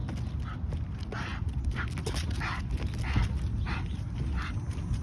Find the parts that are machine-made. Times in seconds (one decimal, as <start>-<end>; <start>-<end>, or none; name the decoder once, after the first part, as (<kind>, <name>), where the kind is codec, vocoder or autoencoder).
none

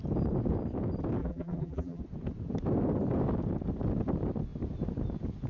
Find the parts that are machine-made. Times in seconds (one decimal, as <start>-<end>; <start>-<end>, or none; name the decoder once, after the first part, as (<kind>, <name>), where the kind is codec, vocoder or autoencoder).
1.2-2.0 (vocoder, BigVGAN v2)

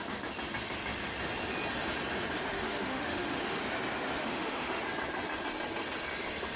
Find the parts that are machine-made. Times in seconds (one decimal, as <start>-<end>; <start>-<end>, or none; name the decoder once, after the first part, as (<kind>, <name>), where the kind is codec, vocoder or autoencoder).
2.5-3.6 (autoencoder, DAC-VAE); 4.2-4.8

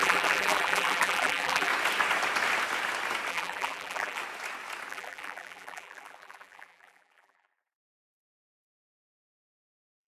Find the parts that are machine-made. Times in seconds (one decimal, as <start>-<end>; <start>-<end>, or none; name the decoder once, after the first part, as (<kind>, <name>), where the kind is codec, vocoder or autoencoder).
0.0-1.7 (vocoder, BigVGAN v2); 3.3-4.2; 4.9-10.1

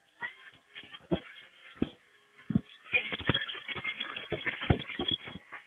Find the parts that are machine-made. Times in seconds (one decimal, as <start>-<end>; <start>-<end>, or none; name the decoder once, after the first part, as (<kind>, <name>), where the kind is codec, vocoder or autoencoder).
1.6-5.0 (codec, DAC)